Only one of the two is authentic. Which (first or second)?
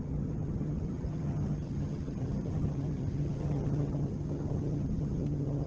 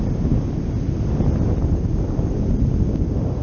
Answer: second